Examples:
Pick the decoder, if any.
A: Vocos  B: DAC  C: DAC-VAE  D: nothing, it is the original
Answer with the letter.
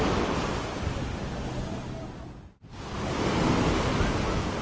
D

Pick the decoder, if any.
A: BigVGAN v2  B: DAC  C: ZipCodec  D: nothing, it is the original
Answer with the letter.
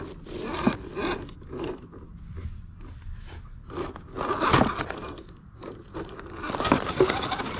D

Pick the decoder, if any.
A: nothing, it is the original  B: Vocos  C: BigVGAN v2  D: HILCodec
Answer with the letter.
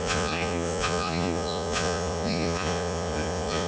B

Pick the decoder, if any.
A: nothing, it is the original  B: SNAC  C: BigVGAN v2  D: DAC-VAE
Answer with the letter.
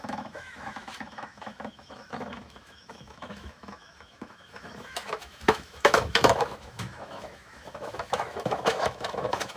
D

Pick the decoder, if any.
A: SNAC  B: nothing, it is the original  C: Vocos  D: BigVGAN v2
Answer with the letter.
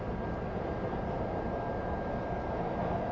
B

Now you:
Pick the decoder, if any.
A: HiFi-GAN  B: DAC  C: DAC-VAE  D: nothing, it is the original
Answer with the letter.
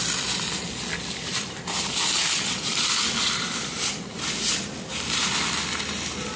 D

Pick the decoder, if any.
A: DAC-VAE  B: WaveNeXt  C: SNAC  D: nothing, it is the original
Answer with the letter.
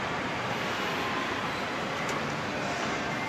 D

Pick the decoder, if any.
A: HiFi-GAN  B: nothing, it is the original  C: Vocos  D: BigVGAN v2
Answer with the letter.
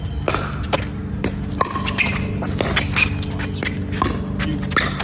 B